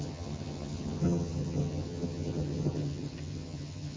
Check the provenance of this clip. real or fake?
fake